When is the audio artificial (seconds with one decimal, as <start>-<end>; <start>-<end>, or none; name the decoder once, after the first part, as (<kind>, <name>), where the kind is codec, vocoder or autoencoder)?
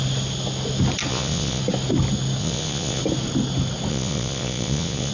1.1-1.6 (vocoder, Vocos); 2.4-3.0; 3.9-5.1